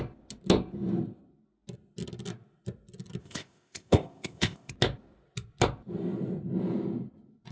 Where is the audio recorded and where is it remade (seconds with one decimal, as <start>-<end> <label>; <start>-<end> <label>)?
0.0-3.2 recorded; 3.2-4.7 remade; 4.7-7.5 recorded